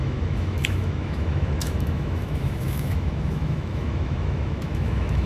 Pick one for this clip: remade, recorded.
remade